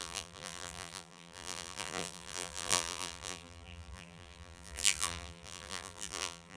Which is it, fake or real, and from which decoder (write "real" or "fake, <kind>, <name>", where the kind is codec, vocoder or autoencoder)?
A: fake, vocoder, BigVGAN v2